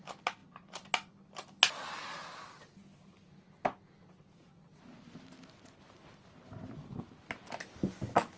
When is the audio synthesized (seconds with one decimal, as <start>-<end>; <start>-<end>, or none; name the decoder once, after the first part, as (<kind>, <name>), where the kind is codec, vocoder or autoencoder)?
none